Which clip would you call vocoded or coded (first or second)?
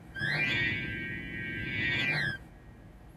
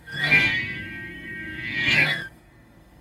second